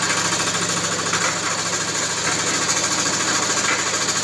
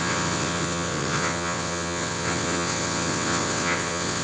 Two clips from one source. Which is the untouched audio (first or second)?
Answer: first